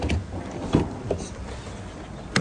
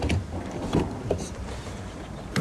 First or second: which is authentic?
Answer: first